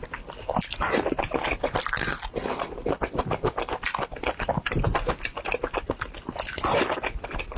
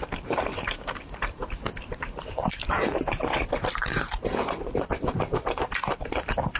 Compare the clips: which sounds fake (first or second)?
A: second